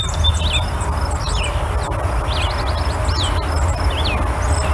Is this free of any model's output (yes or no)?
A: yes